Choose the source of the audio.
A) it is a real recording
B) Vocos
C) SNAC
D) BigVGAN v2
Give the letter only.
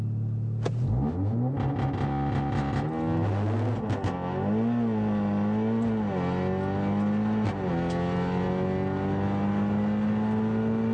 A